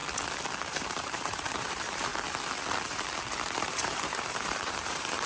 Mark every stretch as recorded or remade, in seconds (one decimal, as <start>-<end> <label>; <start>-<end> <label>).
0.0-0.7 recorded; 0.7-2.1 remade; 2.1-3.7 recorded; 3.7-5.3 remade